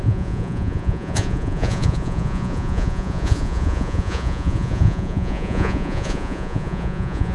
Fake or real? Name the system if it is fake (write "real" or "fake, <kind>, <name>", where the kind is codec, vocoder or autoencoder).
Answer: fake, vocoder, Vocos